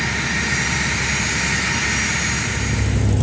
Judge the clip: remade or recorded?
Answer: recorded